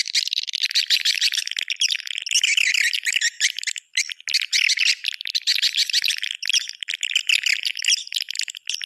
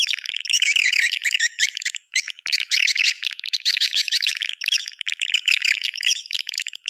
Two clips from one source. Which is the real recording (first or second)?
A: first